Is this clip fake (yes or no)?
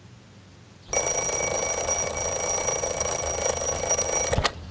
no